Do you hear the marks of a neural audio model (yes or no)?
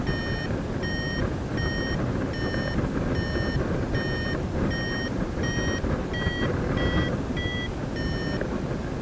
no